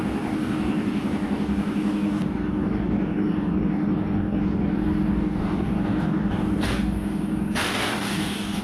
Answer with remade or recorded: remade